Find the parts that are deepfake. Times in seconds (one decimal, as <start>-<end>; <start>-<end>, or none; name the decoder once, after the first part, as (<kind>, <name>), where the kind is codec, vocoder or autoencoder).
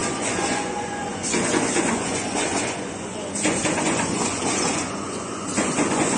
0.0-6.2 (vocoder, Vocos)